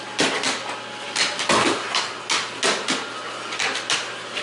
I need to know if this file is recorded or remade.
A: recorded